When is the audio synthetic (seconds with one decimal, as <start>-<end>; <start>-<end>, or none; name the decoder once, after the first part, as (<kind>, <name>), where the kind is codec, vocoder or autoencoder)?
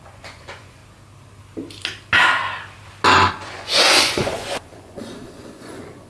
0.0-0.8 (vocoder, Vocos); 3.3-6.1